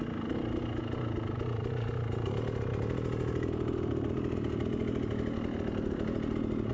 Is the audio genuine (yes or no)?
yes